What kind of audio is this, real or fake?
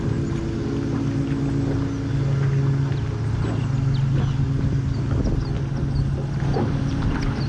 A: real